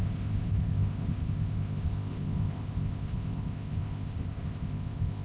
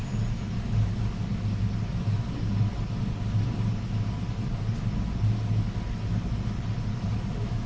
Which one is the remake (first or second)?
first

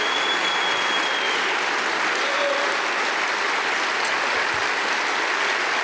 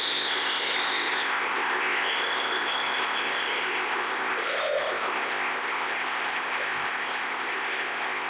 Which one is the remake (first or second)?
second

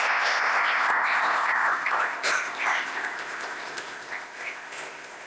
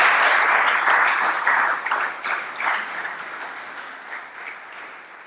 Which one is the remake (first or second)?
first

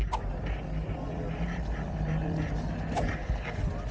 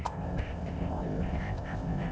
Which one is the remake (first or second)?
second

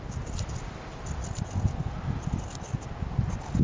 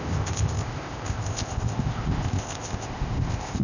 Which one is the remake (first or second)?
second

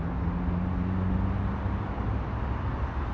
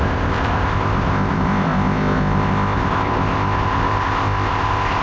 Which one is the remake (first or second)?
second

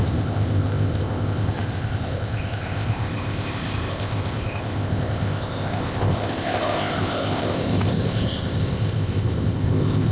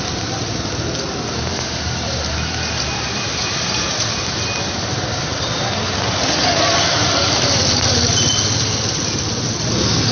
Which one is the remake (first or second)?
first